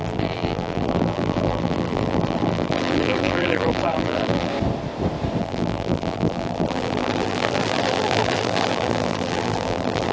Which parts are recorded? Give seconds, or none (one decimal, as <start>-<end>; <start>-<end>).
4.5-5.4

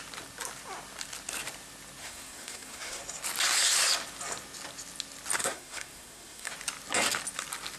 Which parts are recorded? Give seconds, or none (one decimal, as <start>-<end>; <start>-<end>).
0.0-2.0; 3.0-5.4; 6.5-7.8

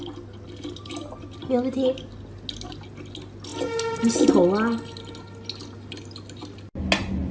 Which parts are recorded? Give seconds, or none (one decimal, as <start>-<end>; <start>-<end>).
0.0-7.3

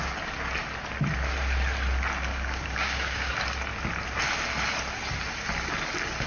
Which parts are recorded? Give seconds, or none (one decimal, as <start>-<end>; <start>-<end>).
0.0-2.3; 3.3-6.3

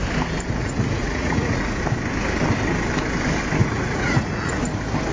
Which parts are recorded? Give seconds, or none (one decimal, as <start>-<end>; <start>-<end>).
0.0-0.6; 1.8-3.6; 4.6-5.1

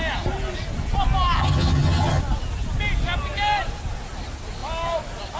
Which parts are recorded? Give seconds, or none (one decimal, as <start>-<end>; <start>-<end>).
0.0-1.4; 2.2-5.4